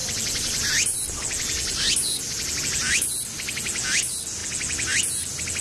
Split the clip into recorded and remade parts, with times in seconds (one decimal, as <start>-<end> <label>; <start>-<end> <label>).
0.0-5.6 recorded